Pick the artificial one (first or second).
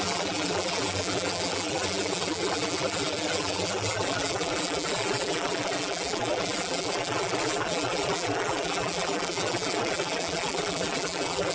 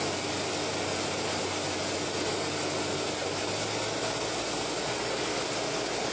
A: first